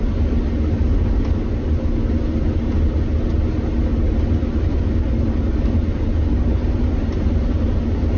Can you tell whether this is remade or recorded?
recorded